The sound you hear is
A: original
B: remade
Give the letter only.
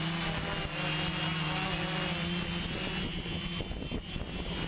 A